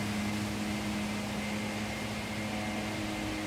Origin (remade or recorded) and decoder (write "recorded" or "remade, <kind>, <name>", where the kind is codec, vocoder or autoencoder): recorded